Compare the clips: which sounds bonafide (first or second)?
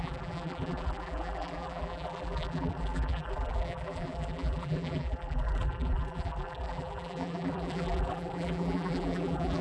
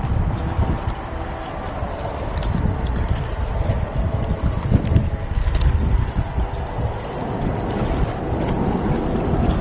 second